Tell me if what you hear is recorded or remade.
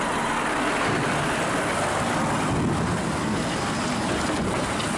recorded